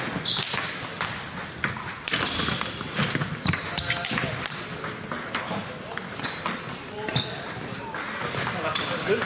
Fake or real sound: real